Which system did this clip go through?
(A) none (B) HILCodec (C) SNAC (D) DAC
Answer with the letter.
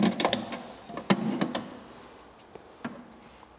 A